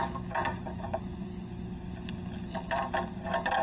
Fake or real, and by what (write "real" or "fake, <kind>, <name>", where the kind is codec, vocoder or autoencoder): real